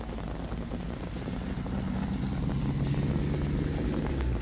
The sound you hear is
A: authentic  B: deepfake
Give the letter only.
A